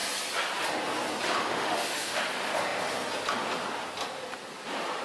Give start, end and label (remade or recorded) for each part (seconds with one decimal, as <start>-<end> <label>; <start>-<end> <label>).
0.0-1.4 recorded; 1.4-2.2 remade; 2.2-5.0 recorded